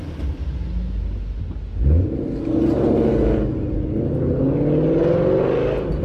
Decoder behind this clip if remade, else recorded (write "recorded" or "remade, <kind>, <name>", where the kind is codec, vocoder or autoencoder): recorded